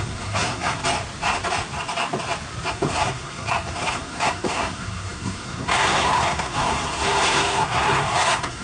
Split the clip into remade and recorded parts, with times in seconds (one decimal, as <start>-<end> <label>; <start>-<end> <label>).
0.0-0.8 remade; 0.8-2.7 recorded; 2.7-8.6 remade